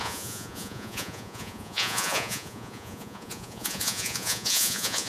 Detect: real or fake fake